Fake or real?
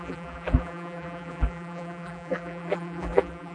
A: fake